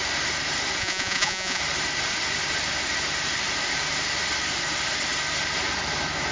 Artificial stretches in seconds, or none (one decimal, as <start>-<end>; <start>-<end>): 0.8-1.6